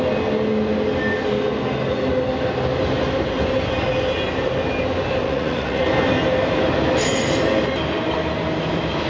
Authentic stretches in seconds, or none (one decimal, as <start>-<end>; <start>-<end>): 0.0-5.2; 5.8-9.1